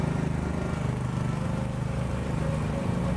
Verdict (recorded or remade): recorded